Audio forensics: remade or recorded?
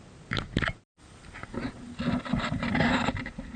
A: recorded